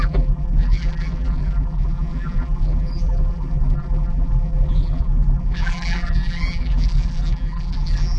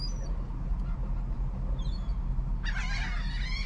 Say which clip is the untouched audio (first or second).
second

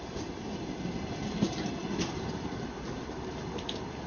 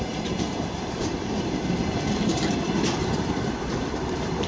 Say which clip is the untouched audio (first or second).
first